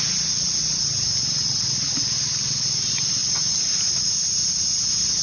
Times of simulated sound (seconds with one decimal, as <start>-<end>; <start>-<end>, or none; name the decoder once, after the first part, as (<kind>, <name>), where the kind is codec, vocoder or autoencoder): none